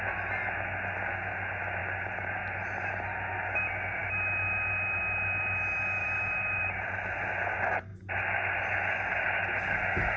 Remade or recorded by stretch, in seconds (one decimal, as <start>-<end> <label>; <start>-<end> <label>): 0.0-6.0 recorded; 6.0-7.3 remade; 7.3-10.2 recorded